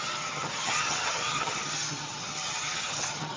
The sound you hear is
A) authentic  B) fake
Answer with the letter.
B